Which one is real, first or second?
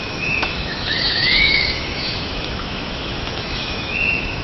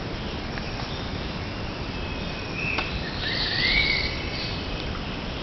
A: second